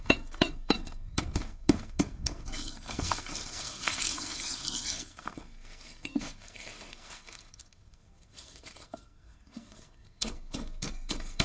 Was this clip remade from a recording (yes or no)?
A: yes